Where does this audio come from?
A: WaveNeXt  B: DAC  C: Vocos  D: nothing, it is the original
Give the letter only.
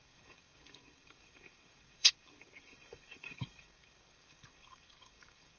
B